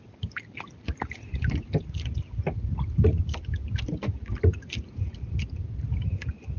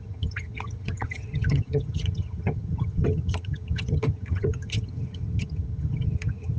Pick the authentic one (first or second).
first